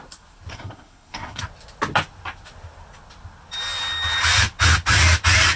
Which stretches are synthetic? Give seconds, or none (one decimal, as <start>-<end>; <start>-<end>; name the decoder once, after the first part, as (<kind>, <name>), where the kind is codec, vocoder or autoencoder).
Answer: 0.5-1.4 (codec, SNAC)

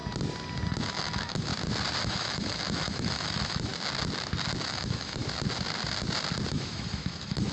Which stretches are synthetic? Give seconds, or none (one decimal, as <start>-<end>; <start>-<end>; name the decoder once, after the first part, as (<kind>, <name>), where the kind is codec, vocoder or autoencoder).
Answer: 0.8-1.5 (autoencoder, DAC-VAE); 2.0-3.7; 4.6-5.2; 6.5-7.5

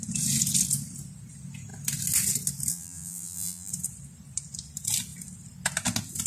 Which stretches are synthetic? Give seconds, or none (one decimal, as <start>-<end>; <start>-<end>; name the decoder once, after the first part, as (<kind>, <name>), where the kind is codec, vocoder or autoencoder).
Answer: 2.7-3.7 (vocoder, BigVGAN v2)

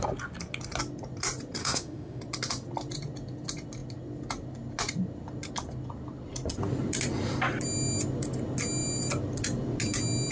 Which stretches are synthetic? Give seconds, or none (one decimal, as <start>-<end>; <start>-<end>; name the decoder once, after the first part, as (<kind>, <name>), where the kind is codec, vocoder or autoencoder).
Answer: 1.6-2.2 (autoencoder, DAC-VAE)

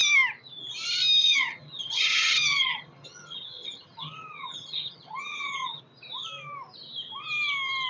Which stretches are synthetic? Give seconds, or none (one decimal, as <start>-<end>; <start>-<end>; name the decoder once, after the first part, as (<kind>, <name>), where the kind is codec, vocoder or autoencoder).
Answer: 1.2-5.8 (vocoder, HiFi-GAN)

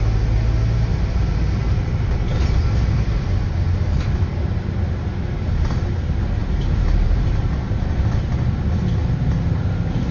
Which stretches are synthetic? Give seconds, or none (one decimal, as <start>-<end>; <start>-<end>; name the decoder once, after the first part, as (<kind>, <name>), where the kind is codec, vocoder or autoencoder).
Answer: 0.9-2.6 (vocoder, BigVGAN v2); 6.4-8.3

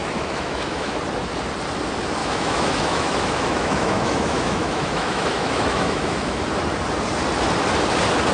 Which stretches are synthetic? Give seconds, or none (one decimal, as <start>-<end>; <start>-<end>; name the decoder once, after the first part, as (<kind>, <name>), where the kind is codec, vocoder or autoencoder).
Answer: 0.0-1.0 (autoencoder, DAC-VAE); 2.2-6.4

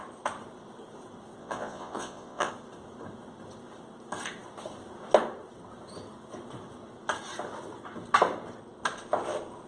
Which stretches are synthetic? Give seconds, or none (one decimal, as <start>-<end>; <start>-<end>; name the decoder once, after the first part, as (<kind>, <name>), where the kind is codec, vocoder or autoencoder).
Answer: 1.4-2.5 (vocoder, Vocos)